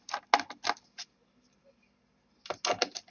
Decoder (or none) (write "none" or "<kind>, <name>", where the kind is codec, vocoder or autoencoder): none